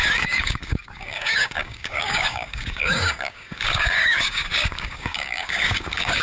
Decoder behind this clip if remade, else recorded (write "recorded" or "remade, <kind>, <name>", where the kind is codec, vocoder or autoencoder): remade, codec, DAC